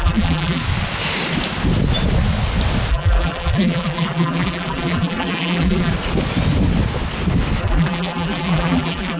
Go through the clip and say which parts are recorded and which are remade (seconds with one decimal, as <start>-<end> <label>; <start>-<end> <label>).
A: 0.0-0.6 remade; 0.6-2.9 recorded; 2.9-5.9 remade; 5.9-7.6 recorded; 7.6-9.2 remade